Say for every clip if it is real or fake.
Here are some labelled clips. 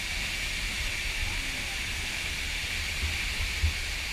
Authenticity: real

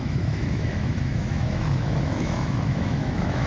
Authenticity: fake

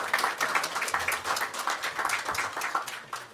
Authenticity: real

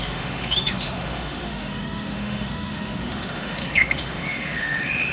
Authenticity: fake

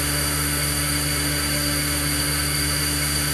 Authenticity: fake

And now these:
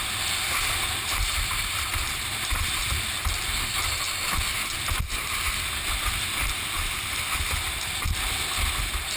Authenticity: real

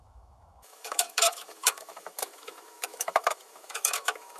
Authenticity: fake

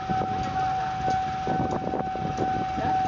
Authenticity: real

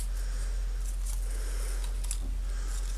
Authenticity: real